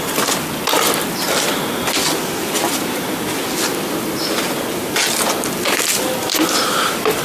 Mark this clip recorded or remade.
recorded